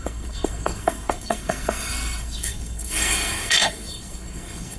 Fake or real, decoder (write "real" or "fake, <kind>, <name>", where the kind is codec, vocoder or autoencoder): fake, codec, SNAC